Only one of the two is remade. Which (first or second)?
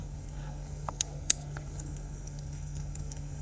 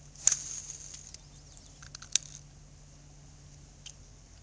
first